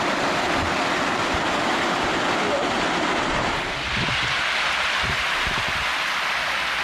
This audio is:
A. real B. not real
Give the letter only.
A